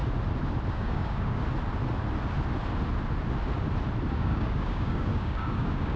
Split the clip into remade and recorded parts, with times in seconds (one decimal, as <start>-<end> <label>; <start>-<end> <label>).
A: 0.0-0.7 recorded; 0.7-1.4 remade; 1.4-4.1 recorded; 4.1-6.0 remade

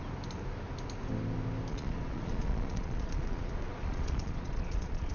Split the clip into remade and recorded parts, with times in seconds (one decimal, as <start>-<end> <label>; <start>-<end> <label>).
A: 0.0-1.7 recorded; 1.7-5.1 remade

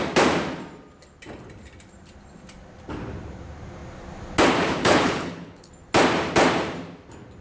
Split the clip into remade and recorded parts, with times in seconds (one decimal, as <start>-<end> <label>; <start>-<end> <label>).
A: 0.0-4.8 recorded; 4.8-5.7 remade; 5.7-7.4 recorded